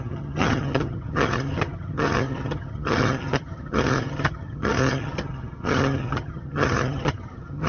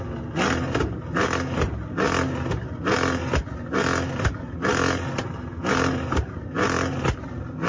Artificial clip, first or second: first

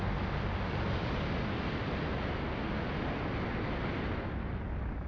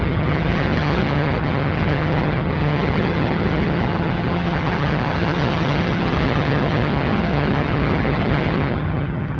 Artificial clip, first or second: second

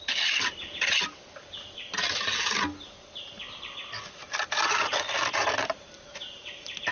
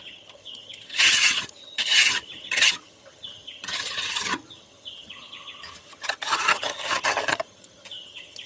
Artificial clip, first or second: second